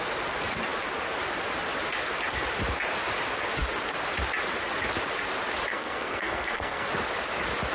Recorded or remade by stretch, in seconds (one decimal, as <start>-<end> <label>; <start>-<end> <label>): 0.0-5.7 recorded; 5.7-6.9 remade; 6.9-7.7 recorded